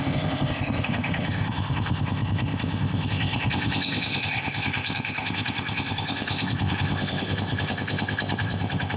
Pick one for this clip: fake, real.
fake